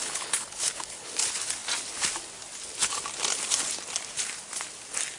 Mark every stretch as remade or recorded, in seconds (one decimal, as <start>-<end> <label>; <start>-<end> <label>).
0.0-1.1 remade; 1.1-5.2 recorded